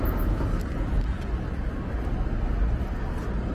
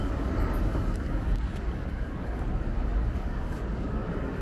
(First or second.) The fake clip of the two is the second